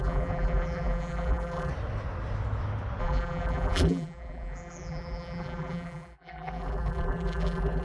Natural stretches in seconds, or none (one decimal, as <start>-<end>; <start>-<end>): 1.7-3.0